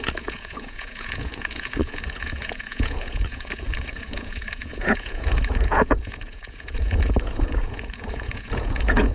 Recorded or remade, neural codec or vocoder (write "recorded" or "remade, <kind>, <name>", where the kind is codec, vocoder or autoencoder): remade, vocoder, Vocos